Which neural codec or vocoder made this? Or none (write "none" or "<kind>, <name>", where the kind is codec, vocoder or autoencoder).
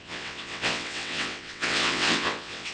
vocoder, WaveNeXt